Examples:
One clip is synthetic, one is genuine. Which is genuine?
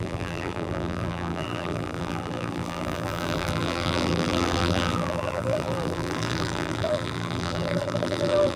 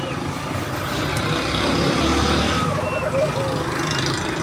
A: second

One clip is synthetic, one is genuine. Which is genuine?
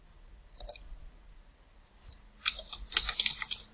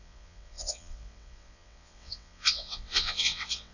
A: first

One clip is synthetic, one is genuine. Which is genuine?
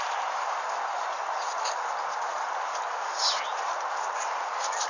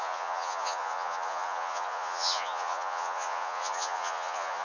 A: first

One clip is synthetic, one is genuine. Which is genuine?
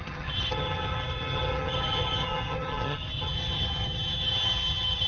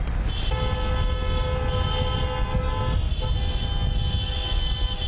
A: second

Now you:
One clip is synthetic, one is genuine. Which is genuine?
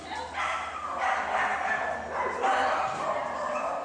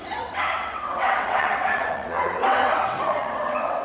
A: first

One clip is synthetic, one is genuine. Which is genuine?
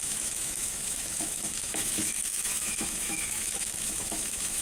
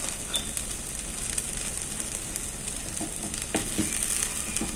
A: second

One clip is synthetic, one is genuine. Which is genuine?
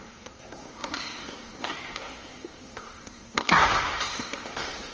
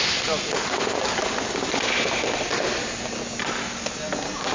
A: second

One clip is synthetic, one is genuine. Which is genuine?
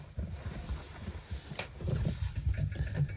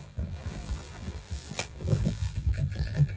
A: first